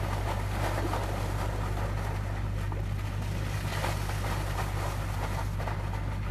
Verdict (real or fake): real